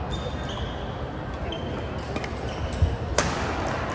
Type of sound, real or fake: real